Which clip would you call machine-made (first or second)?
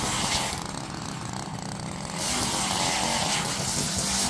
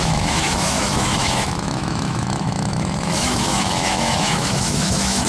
second